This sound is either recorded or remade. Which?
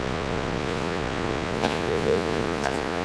remade